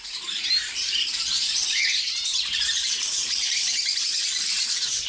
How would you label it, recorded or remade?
remade